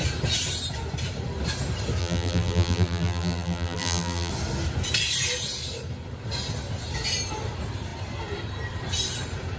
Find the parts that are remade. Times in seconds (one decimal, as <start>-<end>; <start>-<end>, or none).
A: 2.0-4.3